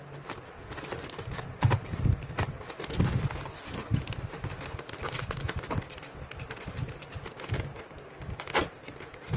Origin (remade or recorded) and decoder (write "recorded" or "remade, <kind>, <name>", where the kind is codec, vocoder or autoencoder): recorded